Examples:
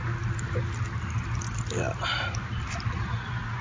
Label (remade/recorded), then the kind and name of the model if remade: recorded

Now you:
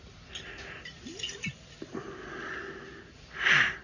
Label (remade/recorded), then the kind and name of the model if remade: recorded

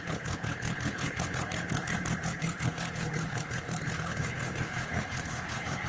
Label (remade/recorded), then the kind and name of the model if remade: remade, codec, HILCodec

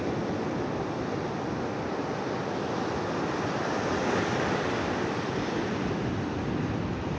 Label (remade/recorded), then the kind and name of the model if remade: recorded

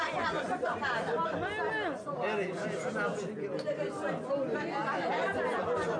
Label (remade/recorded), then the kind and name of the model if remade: recorded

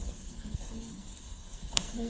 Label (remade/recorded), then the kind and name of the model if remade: remade, codec, SNAC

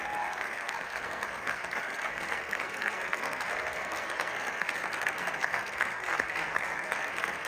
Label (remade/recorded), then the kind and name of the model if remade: remade, codec, SNAC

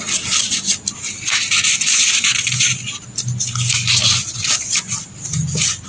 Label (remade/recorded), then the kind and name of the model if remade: recorded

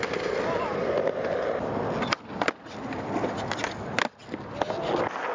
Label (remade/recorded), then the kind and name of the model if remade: recorded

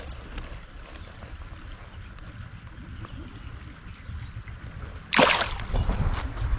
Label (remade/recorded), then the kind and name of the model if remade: recorded